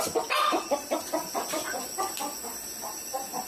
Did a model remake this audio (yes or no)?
no